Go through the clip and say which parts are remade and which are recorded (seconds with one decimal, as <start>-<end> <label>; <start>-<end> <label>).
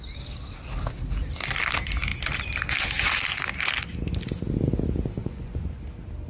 0.0-5.2 recorded; 5.2-5.8 remade; 5.8-6.3 recorded